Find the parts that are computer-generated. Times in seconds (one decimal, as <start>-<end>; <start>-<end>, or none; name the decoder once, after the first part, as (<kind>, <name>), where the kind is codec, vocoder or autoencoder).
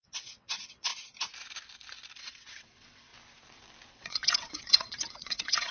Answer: 0.0-0.9 (vocoder, WaveNeXt); 2.2-3.1; 3.9-5.7